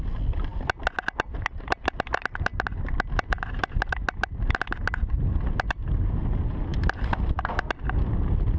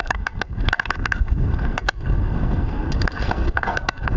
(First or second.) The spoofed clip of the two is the second